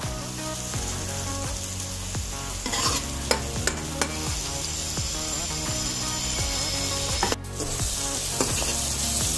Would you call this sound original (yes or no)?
yes